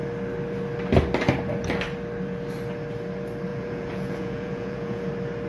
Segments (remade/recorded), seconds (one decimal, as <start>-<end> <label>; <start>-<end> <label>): 0.0-3.5 recorded; 3.5-5.1 remade; 5.1-5.5 recorded